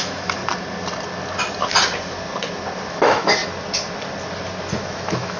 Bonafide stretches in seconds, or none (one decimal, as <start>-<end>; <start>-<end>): 0.4-2.9; 3.4-4.7